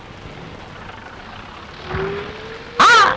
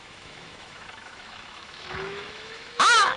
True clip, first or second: first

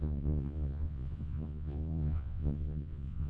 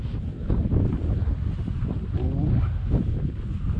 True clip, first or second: second